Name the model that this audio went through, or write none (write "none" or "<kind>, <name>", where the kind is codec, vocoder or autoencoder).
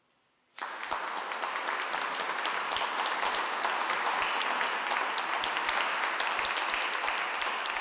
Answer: none